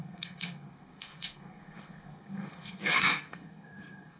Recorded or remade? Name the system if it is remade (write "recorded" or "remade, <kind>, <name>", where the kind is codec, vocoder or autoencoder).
remade, codec, SNAC